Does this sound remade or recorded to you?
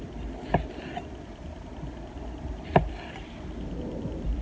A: remade